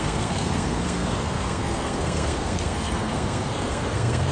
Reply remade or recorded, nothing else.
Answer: remade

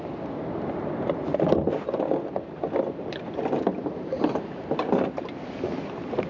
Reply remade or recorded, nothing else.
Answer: recorded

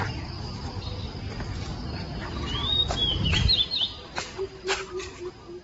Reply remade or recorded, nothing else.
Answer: recorded